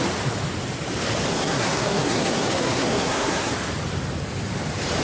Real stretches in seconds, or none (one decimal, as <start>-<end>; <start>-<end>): 0.0-1.3; 3.5-5.0